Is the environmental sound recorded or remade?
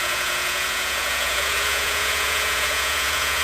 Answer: remade